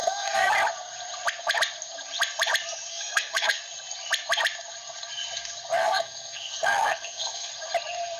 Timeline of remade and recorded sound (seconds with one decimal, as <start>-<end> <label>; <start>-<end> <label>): 0.0-0.5 remade; 0.5-2.9 recorded; 2.9-3.6 remade; 3.6-5.8 recorded; 5.8-7.5 remade; 7.5-8.2 recorded